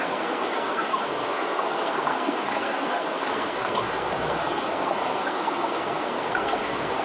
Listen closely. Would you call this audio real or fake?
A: fake